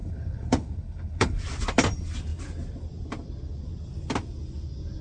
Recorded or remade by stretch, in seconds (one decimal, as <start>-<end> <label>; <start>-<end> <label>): 0.0-1.4 remade; 1.4-5.0 recorded